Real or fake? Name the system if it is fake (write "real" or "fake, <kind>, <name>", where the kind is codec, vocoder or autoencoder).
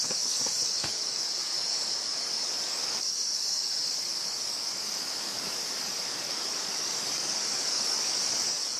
fake, codec, DAC